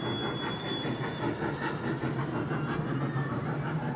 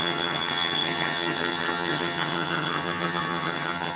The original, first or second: first